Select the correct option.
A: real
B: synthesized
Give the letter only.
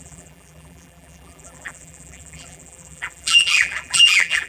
B